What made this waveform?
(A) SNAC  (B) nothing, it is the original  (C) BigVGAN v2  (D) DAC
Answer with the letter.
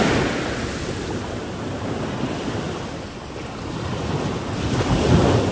B